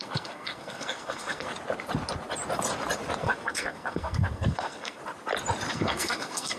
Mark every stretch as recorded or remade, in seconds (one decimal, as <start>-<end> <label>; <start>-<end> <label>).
0.0-1.5 remade; 1.5-3.2 recorded; 3.2-5.0 remade; 5.0-5.7 recorded; 5.7-6.6 remade